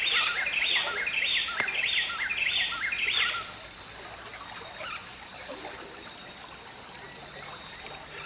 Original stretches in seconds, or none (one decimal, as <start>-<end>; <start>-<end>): 0.0-8.3